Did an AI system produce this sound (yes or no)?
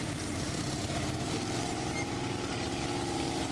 no